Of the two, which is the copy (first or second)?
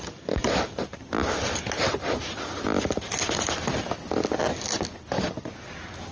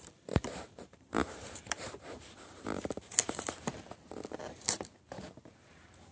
second